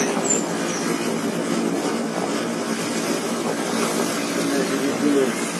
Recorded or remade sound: recorded